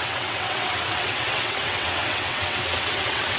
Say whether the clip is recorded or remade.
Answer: remade